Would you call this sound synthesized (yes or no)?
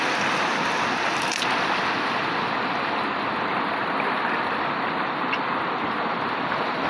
no